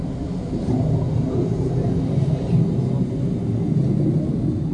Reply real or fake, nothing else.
real